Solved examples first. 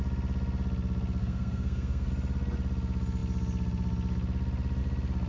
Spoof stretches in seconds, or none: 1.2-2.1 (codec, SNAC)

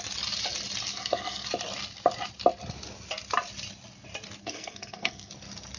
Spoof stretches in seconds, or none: 0.9-1.5 (codec, SNAC); 4.4-5.3

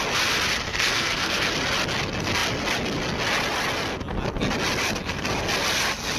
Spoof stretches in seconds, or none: 0.7-1.5 (codec, SNAC)

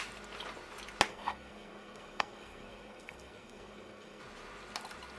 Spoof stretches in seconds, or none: 1.1-4.2 (codec, SNAC)

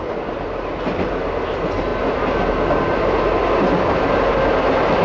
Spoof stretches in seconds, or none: none